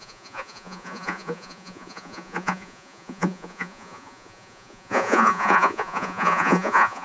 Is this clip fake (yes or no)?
yes